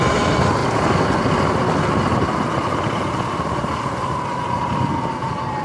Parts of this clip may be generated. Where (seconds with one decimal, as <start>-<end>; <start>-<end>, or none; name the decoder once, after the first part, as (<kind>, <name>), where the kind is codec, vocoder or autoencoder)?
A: none